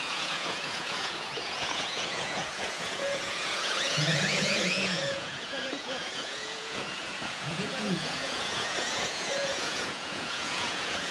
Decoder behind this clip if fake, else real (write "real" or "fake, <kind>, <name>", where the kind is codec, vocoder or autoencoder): fake, vocoder, Vocos